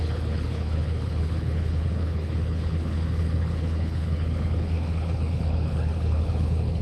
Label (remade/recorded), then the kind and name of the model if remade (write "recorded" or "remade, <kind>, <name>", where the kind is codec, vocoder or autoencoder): remade, codec, HILCodec